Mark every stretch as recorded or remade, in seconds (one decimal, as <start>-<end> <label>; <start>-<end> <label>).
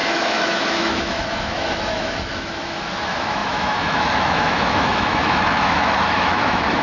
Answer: 0.0-6.8 remade